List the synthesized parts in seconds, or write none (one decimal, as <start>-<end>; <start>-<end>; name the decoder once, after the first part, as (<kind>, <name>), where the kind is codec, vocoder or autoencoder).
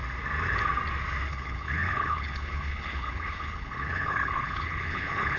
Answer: 1.3-5.4 (codec, HILCodec)